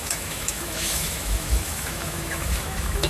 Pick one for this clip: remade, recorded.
remade